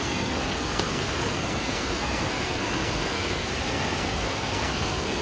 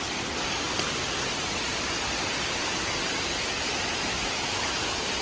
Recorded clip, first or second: second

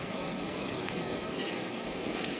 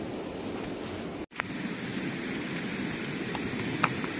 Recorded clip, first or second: second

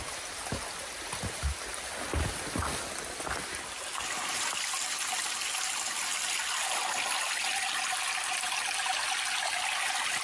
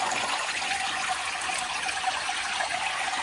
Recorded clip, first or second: first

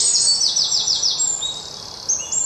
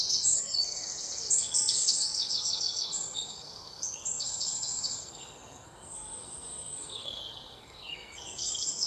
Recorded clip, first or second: first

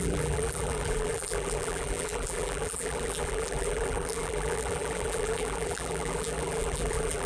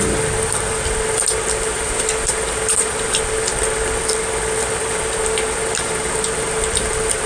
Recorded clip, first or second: second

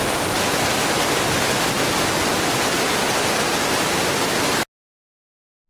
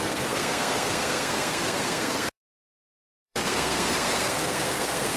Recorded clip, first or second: first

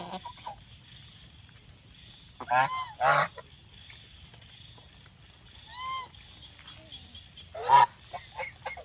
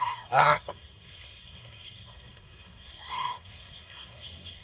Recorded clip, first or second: first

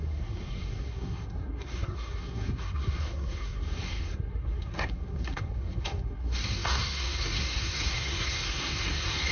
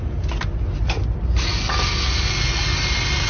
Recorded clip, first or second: second